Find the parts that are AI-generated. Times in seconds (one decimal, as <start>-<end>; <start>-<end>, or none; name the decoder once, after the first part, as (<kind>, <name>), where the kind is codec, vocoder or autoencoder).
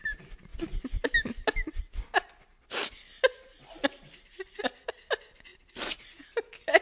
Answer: none